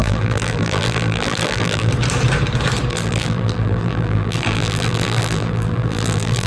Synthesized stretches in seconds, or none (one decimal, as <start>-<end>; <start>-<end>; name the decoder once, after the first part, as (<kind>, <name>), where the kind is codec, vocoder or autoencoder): 0.0-1.9 (vocoder, BigVGAN v2); 2.9-6.5